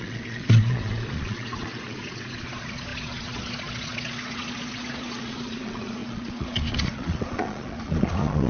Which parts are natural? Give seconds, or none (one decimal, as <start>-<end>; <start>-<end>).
none